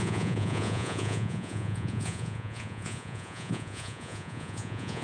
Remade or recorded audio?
remade